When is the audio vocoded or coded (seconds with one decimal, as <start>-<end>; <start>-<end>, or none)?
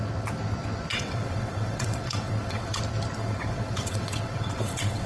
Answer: 0.9-2.8; 3.2-5.1